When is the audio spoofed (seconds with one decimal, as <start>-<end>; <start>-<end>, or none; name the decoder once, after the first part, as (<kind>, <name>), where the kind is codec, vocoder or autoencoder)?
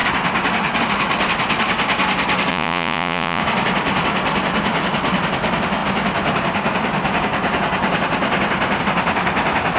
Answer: 2.5-3.4 (vocoder, Vocos)